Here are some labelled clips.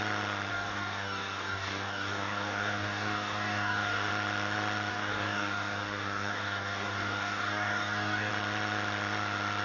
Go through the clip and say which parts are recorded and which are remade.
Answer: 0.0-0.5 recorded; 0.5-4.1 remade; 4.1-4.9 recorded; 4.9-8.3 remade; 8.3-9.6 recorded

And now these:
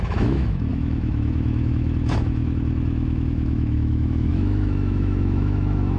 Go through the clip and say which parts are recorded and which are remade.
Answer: 0.0-6.0 remade

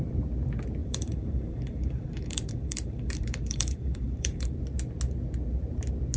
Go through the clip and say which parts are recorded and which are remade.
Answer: 0.0-0.8 recorded; 0.8-4.5 remade; 4.5-6.2 recorded

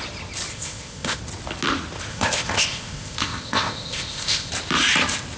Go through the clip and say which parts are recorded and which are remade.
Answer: 0.0-0.5 recorded; 0.5-1.2 remade; 1.2-2.1 recorded; 2.1-4.5 remade; 4.5-5.4 recorded